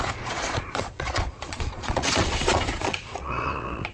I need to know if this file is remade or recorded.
remade